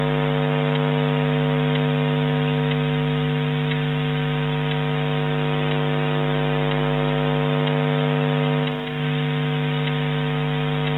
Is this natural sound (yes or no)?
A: yes